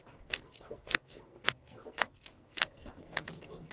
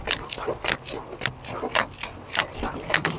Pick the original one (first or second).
second